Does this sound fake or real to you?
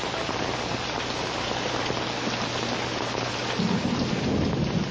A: real